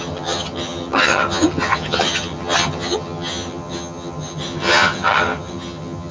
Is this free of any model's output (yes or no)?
no